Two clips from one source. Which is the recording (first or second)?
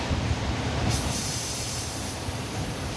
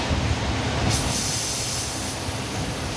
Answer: second